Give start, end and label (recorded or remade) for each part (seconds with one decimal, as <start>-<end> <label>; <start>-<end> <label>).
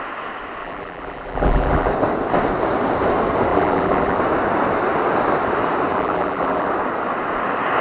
0.0-0.6 recorded; 0.6-1.9 remade; 1.9-3.5 recorded; 3.5-4.2 remade; 4.2-5.9 recorded; 5.9-6.7 remade; 6.7-7.8 recorded